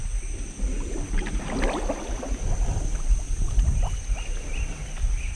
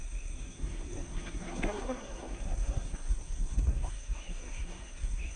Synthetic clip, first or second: second